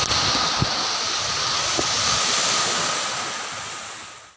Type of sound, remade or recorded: recorded